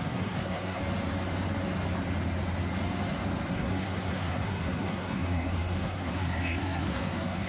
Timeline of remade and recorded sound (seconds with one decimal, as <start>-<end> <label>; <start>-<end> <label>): 0.0-0.8 remade; 0.8-3.5 recorded; 3.5-7.5 remade